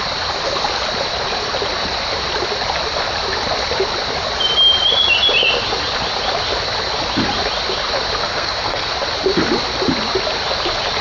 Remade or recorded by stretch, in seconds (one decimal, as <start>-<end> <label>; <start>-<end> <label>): 0.0-8.2 recorded; 8.2-8.9 remade; 8.9-11.0 recorded